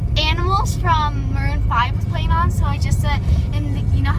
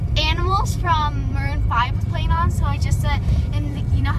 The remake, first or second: second